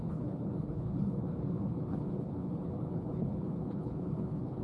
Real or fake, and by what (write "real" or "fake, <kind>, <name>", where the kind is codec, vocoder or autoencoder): fake, codec, HILCodec